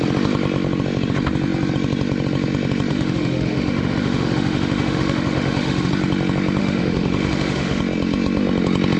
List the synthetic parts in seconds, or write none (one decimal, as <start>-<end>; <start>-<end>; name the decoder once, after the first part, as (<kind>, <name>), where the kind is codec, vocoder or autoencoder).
2.9-5.9 (autoencoder, DAC-VAE); 6.6-7.8